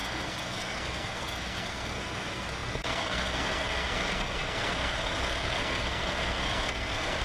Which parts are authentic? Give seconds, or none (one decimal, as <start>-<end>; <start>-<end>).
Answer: none